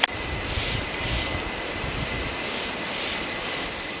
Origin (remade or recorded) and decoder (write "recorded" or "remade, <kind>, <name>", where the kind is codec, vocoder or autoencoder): recorded